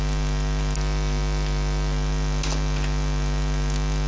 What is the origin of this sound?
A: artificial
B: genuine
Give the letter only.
B